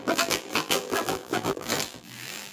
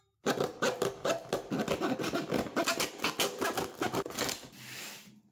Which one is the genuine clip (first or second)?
second